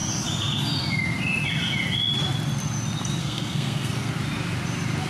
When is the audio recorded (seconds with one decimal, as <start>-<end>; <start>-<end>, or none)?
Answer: 0.0-3.2; 4.1-5.1